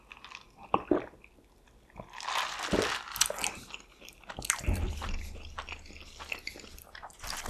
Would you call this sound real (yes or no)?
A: yes